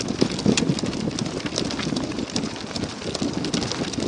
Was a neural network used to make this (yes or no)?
no